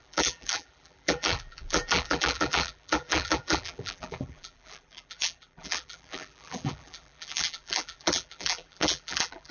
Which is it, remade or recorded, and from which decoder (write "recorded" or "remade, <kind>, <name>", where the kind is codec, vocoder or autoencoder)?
remade, vocoder, BigVGAN v2